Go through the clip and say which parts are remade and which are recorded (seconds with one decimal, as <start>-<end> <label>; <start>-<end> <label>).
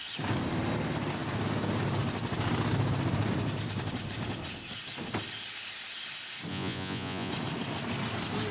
0.0-6.5 recorded; 6.5-7.3 remade; 7.3-8.5 recorded